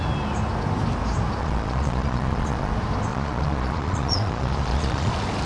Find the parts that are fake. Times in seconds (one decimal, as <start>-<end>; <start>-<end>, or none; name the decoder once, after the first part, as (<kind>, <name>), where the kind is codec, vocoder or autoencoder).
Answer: 1.4-2.7 (vocoder, Vocos); 3.1-5.1